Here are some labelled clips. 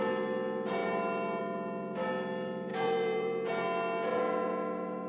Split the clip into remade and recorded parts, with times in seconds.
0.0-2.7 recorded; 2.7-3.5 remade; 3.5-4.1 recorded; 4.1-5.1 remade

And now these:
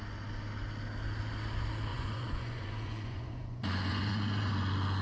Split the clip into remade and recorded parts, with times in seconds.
0.0-1.9 recorded; 1.9-4.5 remade; 4.5-5.0 recorded

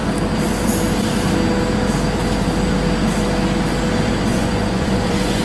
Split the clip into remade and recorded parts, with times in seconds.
0.0-4.3 recorded; 4.3-5.4 remade

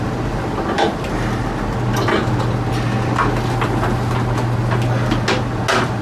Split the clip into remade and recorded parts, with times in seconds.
0.0-6.0 recorded